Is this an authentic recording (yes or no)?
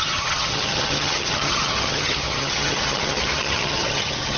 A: no